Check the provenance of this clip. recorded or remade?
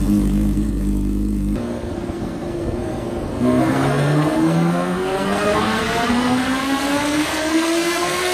remade